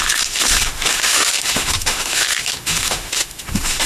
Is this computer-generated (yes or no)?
yes